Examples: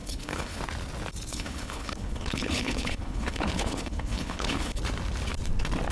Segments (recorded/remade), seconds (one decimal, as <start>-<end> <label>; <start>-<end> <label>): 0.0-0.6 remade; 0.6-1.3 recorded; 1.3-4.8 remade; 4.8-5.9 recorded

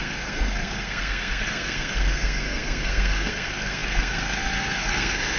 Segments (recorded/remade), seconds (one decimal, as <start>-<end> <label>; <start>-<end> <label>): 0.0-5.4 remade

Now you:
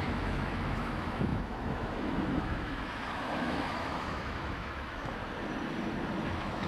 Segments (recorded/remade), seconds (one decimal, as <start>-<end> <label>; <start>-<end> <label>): 0.0-5.2 remade; 5.2-6.3 recorded; 6.3-6.7 remade

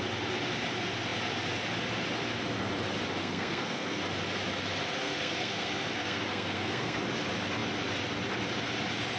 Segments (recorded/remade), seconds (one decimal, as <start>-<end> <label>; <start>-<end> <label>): 0.0-3.2 recorded; 3.2-4.0 remade; 4.0-5.0 recorded; 5.0-7.0 remade; 7.0-9.2 recorded